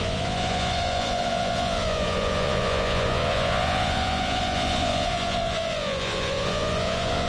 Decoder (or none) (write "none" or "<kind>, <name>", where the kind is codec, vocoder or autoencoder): vocoder, Vocos